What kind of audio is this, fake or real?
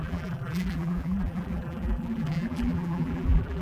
fake